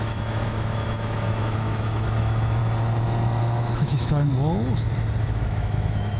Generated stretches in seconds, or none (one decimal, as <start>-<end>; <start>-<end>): 0.0-2.6; 3.4-4.3; 5.2-6.2